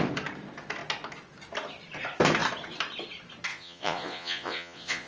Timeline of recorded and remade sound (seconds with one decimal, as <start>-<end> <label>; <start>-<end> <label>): 0.0-3.5 recorded; 3.5-5.1 remade